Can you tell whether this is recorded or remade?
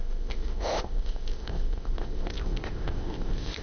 remade